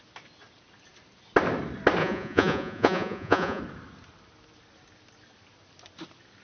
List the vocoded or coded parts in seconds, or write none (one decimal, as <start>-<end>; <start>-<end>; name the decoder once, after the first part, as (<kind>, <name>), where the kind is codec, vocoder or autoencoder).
2.0-3.6 (vocoder, Vocos)